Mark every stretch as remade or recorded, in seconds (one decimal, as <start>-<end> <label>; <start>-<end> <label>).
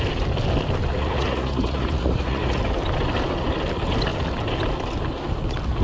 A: 0.0-0.9 recorded; 0.9-2.6 remade; 2.6-5.8 recorded